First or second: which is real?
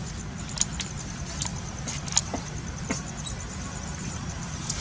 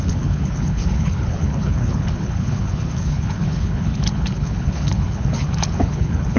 first